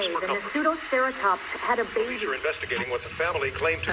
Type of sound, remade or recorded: recorded